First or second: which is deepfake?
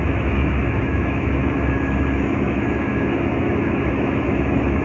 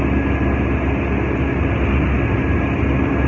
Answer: first